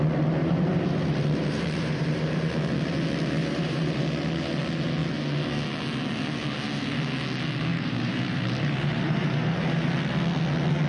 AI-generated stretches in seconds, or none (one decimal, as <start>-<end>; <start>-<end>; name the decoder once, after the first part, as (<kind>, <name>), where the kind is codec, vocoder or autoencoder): 0.4-2.5 (vocoder, BigVGAN v2); 3.4-4.0; 7.7-9.9